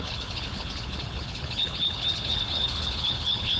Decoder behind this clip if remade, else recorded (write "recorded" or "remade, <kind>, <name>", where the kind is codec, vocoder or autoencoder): remade, codec, HILCodec